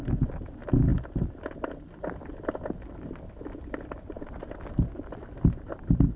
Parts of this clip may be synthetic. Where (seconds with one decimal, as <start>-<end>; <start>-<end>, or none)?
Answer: none